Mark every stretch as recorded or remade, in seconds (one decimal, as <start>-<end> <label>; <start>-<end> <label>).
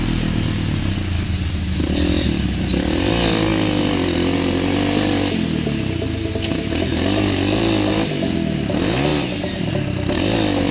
0.0-9.1 recorded; 9.1-9.7 remade; 9.7-10.7 recorded